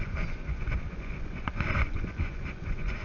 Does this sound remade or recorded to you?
remade